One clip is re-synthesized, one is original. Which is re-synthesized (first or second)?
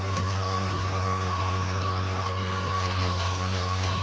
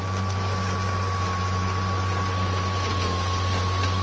first